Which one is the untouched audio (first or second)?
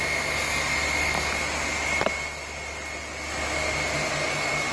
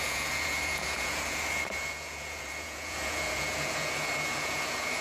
first